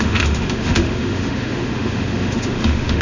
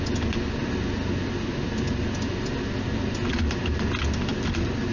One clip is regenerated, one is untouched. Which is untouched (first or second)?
second